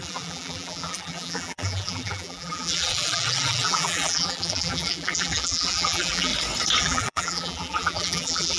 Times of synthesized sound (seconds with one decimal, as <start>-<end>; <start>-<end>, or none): 0.0-6.3; 6.8-8.6